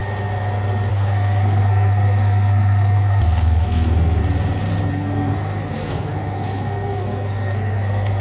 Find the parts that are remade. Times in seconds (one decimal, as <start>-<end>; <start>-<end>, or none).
0.9-4.2; 4.9-8.2